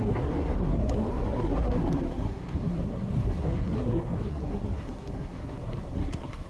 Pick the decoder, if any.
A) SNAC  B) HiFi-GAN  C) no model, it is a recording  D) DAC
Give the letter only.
A